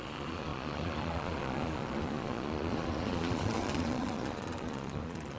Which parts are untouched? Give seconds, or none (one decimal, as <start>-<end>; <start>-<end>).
none